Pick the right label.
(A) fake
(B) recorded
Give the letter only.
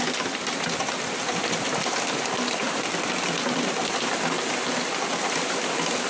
B